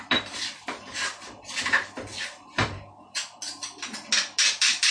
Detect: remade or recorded recorded